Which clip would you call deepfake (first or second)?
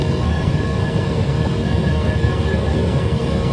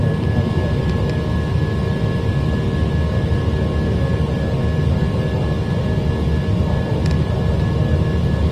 first